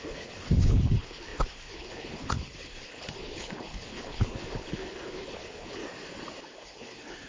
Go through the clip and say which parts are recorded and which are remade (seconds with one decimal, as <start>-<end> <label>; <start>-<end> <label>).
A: 0.0-5.8 remade; 5.8-6.6 recorded; 6.6-7.3 remade